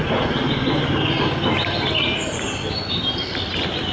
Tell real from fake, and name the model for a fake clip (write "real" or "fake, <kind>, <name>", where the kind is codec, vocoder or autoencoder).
real